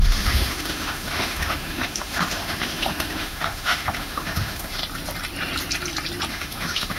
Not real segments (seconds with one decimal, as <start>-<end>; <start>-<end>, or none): 0.0-4.8; 6.3-7.0